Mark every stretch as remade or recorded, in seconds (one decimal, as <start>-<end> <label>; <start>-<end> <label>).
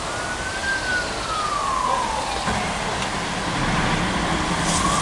0.0-5.0 recorded